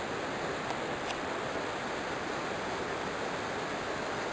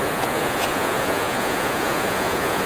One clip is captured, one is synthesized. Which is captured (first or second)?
first